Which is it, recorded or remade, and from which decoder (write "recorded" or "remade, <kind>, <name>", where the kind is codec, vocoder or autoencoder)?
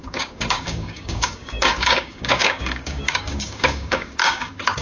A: remade, codec, DAC